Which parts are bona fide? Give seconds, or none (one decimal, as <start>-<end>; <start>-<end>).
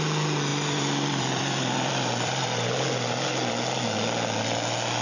0.0-0.5; 3.5-5.0